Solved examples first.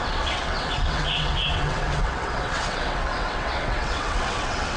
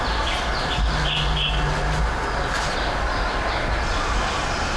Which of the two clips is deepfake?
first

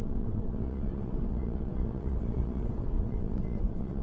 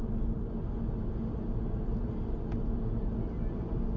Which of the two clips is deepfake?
first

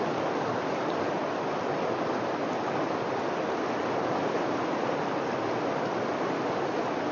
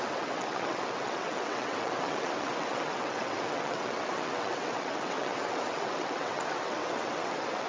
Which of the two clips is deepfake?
second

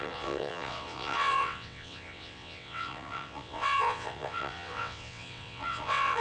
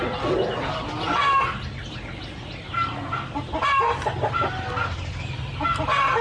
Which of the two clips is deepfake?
first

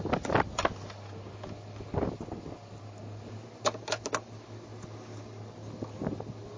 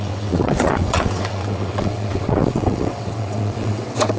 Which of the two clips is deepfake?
second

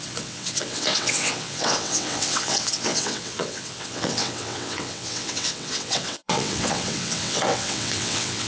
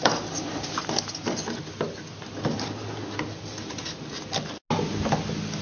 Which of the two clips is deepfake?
first